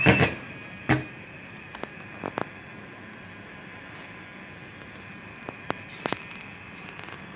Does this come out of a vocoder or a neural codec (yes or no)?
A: no